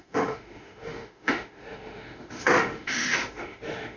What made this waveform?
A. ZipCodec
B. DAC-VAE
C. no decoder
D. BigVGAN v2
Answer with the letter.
B